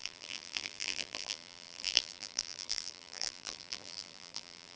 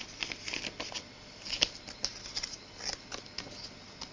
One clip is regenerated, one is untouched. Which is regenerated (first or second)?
first